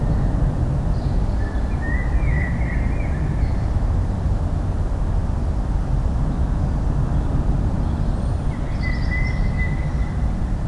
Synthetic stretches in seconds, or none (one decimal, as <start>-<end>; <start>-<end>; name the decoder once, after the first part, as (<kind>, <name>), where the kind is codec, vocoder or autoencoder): none